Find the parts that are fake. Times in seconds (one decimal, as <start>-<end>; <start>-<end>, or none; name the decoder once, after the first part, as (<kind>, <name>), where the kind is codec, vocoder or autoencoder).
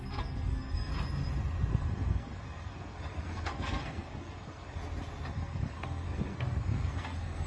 0.0-0.9 (codec, SNAC); 1.7-4.8; 5.3-7.5